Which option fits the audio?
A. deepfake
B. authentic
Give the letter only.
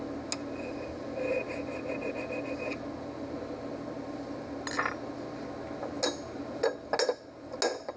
B